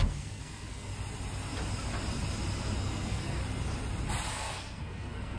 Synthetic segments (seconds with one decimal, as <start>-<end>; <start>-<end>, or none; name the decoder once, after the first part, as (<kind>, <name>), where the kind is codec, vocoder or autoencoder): 0.0-0.9 (codec, SNAC); 2.8-3.4; 4.3-5.4